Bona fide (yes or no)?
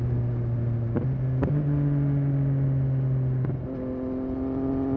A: yes